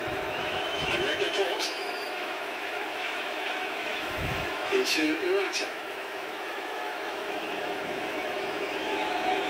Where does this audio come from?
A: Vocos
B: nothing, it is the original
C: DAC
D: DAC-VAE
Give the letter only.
D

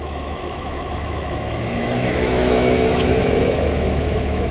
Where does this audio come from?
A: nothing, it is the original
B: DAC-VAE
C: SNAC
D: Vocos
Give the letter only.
B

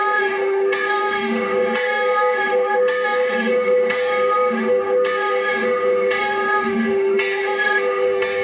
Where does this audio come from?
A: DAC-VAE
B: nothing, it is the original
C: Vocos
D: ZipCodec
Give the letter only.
A